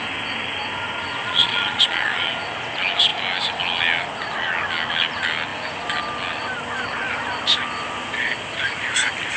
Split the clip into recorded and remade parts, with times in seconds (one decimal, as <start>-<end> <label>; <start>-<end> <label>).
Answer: 0.0-1.2 recorded; 1.2-2.3 remade; 2.3-9.4 recorded